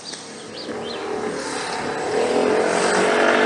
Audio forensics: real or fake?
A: real